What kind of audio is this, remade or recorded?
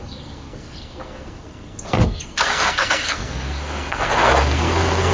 remade